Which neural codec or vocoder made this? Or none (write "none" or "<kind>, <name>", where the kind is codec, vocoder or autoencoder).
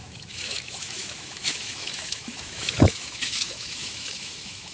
autoencoder, DAC-VAE